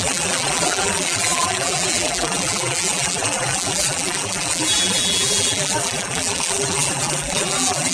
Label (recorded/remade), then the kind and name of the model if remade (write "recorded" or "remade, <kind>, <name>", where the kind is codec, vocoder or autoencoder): remade, vocoder, BigVGAN v2